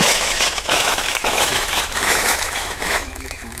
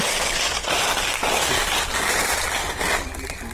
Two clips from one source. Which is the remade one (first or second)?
first